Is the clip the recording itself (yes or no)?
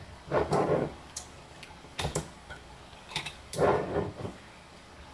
no